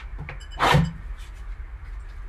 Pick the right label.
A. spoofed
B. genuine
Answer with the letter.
B